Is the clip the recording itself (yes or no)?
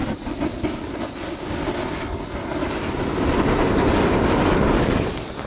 yes